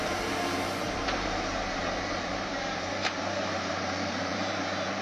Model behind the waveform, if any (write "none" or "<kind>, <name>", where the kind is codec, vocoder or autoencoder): vocoder, BigVGAN v2